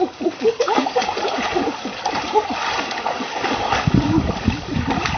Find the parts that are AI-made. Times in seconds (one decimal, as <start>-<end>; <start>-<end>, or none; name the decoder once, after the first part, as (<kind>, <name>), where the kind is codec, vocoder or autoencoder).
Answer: 0.0-1.9 (codec, DAC); 2.8-5.2